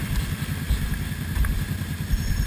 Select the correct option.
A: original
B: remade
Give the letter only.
A